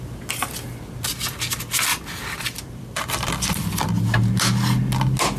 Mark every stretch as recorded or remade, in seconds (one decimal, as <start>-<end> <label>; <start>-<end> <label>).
0.0-1.9 recorded; 1.9-3.9 remade; 3.9-5.4 recorded